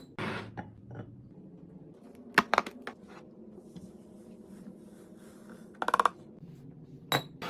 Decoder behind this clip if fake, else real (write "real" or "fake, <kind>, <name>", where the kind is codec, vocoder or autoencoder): real